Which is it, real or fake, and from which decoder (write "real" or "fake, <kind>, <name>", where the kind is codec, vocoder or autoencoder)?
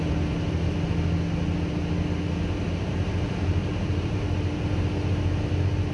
real